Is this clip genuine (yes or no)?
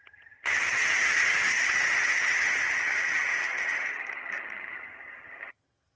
no